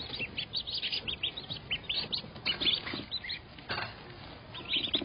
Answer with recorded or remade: recorded